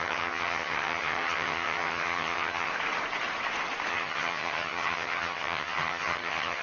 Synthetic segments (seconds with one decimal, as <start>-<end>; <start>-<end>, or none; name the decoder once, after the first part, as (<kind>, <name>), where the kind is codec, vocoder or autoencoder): 0.0-2.7 (vocoder, HiFi-GAN); 3.9-6.6